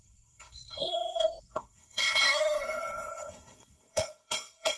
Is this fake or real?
fake